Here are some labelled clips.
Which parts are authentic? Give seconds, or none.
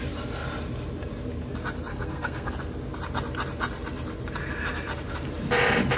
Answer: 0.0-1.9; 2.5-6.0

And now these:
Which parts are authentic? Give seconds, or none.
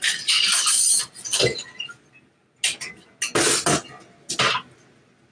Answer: 0.0-5.3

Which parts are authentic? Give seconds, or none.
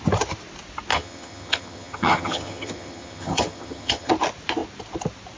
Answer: 0.0-0.9; 4.1-5.4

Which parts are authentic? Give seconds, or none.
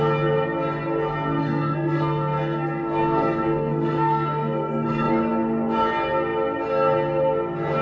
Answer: 0.0-1.4; 5.2-7.8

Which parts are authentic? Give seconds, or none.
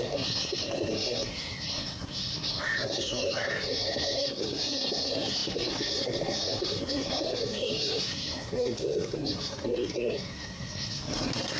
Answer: none